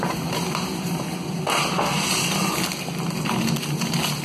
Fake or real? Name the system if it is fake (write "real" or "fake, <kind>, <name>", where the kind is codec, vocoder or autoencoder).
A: real